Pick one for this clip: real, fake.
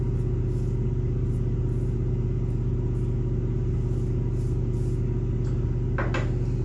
real